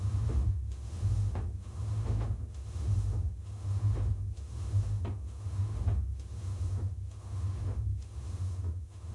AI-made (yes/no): yes